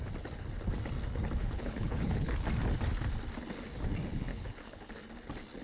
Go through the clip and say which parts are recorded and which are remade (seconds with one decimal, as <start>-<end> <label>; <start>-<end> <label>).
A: 0.0-1.4 recorded; 1.4-2.3 remade; 2.3-4.3 recorded; 4.3-4.9 remade; 4.9-5.6 recorded

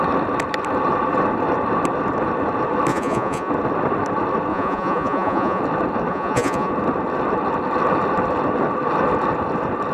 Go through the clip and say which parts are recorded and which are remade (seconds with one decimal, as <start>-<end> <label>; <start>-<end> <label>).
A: 0.0-2.9 recorded; 2.9-3.5 remade; 3.5-4.5 recorded; 4.5-5.6 remade; 5.6-6.1 recorded; 6.1-6.7 remade; 6.7-9.9 recorded

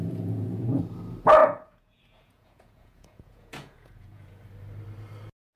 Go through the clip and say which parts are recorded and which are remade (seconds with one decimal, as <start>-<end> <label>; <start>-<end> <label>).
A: 0.0-0.8 remade; 0.8-1.4 recorded; 1.4-4.4 remade; 4.4-5.6 recorded

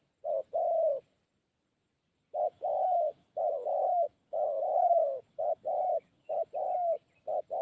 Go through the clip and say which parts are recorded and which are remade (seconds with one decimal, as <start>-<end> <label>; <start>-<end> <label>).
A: 0.0-2.3 recorded; 2.3-6.5 remade; 6.5-7.6 recorded

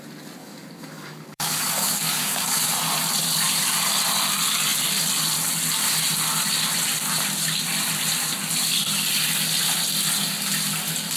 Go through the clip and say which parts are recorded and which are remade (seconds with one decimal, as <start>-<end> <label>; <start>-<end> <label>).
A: 0.0-0.4 recorded; 0.4-2.7 remade; 2.7-11.2 recorded